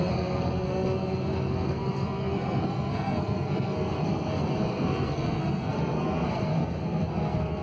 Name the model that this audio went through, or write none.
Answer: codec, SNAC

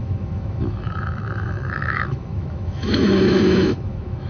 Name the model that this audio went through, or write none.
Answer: autoencoder, DAC-VAE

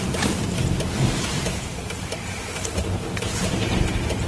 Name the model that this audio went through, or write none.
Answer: vocoder, BigVGAN v2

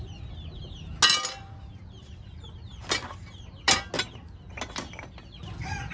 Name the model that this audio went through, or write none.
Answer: none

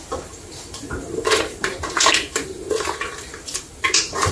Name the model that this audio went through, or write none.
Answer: vocoder, BigVGAN v2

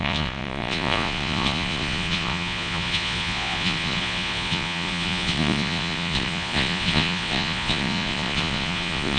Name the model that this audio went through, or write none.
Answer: vocoder, Vocos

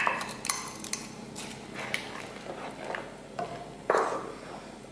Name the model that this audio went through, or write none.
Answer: none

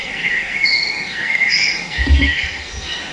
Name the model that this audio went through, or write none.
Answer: codec, SNAC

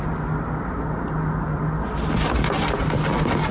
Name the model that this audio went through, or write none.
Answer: none